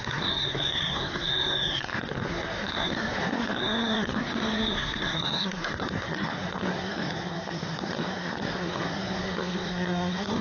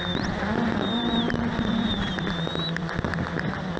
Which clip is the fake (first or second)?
first